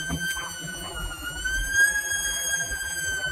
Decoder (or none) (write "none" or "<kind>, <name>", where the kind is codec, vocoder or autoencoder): vocoder, BigVGAN v2